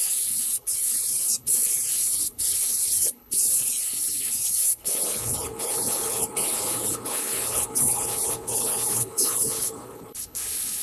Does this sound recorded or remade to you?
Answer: remade